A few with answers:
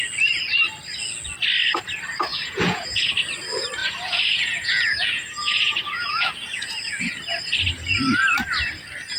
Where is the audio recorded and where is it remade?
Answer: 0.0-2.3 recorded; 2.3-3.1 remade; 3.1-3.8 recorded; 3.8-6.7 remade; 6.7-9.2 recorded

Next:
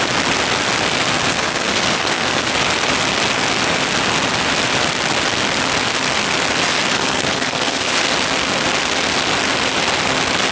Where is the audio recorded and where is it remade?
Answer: 0.0-1.3 recorded; 1.3-2.6 remade; 2.6-6.9 recorded; 6.9-7.9 remade; 7.9-10.5 recorded

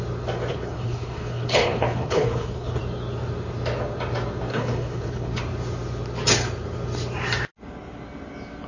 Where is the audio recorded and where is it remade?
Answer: 0.0-0.5 recorded; 0.5-2.8 remade; 2.8-4.5 recorded; 4.5-5.4 remade; 5.4-8.7 recorded

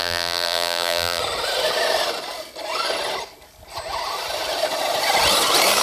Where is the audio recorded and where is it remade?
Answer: 0.0-1.2 remade; 1.2-5.8 recorded